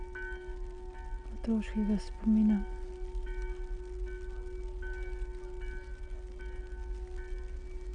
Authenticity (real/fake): real